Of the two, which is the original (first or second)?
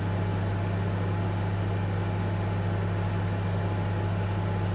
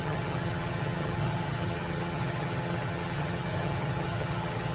first